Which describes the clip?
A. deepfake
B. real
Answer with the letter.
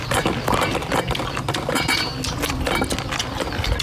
B